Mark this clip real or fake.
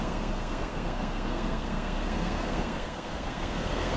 fake